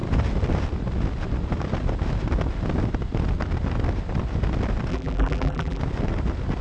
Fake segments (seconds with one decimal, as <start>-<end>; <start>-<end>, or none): 4.9-5.8